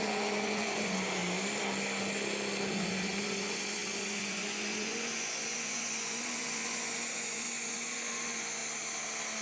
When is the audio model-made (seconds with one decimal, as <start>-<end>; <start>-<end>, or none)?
0.0-1.2; 2.7-8.6